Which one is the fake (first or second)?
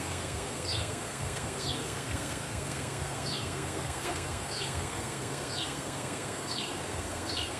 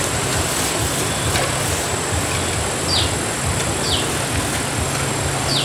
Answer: first